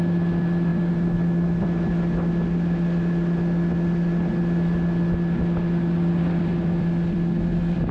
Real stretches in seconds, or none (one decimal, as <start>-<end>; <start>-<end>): 0.0-7.9